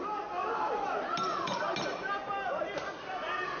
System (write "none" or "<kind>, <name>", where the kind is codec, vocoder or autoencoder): none